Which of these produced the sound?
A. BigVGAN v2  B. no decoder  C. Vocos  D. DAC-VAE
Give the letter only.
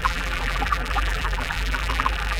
A